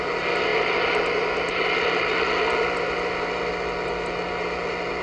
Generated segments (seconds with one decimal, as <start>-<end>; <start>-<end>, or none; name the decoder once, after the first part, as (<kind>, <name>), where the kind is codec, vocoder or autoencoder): none